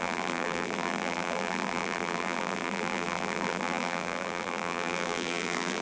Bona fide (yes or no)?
no